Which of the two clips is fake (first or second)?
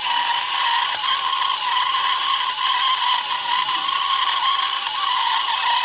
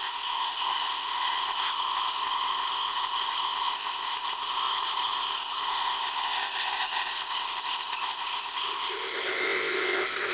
second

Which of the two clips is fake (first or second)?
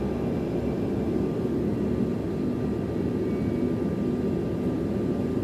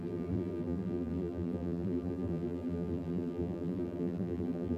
second